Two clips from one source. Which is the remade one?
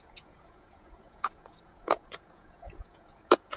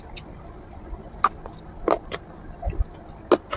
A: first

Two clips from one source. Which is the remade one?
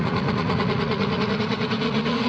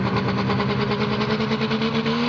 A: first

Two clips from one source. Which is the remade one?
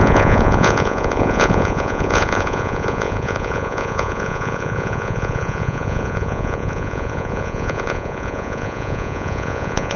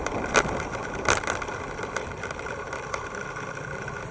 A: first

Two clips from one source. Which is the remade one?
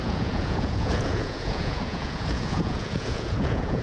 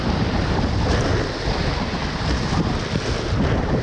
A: first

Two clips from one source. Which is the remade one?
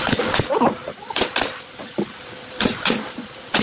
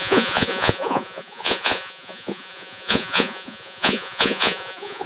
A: second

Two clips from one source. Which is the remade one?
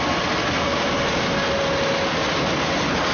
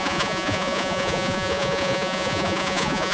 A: second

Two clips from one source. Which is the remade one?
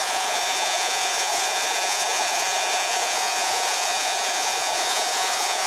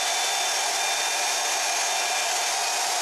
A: first